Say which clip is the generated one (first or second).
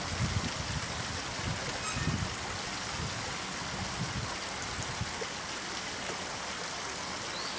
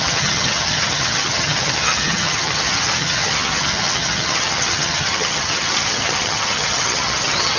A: second